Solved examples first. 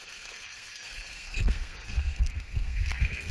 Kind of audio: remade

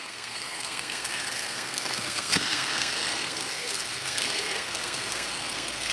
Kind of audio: remade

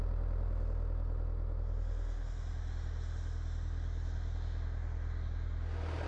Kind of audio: recorded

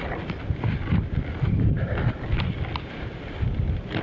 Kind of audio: recorded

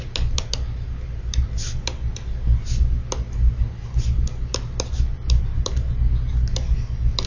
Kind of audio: recorded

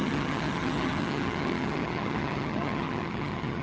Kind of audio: remade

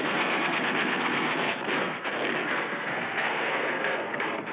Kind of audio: remade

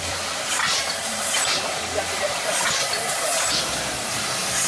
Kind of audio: recorded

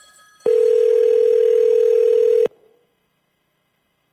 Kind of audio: remade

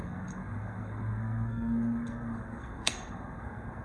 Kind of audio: remade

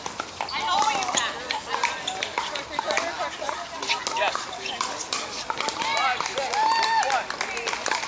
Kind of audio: recorded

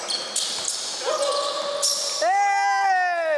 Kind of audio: recorded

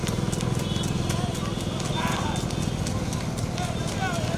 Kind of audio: recorded